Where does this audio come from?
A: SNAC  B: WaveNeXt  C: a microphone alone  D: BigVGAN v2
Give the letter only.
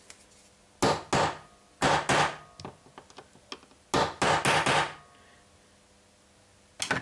C